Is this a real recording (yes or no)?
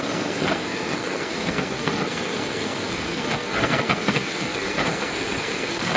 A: no